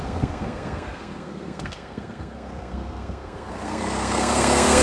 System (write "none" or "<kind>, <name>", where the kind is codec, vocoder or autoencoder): codec, SNAC